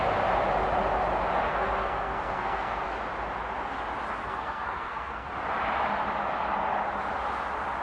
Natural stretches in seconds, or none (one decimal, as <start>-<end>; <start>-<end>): 0.0-1.5; 2.8-4.2; 5.3-7.8